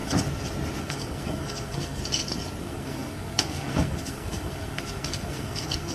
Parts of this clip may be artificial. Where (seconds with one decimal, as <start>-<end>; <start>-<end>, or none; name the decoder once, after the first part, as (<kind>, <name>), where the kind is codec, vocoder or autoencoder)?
0.8-2.0 (codec, SNAC); 2.6-5.9